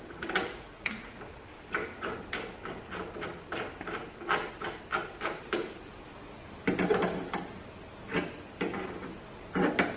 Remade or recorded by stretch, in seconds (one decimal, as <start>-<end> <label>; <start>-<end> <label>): 0.0-0.4 recorded; 0.4-1.2 remade; 1.2-10.0 recorded